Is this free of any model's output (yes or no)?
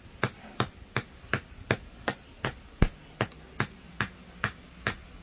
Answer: yes